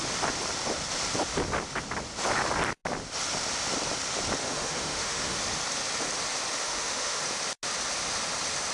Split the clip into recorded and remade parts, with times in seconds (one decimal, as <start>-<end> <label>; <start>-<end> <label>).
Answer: 0.0-4.4 recorded; 4.4-5.4 remade; 5.4-6.6 recorded; 6.6-7.2 remade; 7.2-8.7 recorded